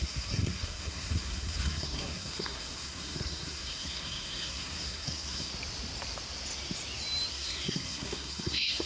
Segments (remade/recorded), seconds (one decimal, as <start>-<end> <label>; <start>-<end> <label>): 0.0-5.5 remade; 5.5-7.3 recorded; 7.3-8.9 remade